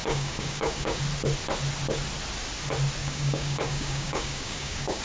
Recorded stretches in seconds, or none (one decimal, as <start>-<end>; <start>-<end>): 1.0-3.0

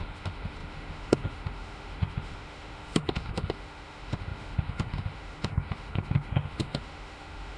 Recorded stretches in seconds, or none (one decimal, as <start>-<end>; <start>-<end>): none

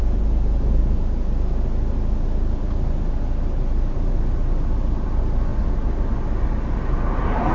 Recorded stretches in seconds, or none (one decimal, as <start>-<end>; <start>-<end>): 5.5-7.1